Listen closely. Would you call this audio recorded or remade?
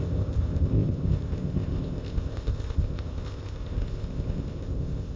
remade